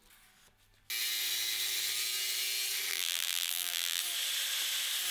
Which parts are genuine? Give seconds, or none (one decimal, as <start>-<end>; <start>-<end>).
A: 0.0-2.9; 4.0-5.1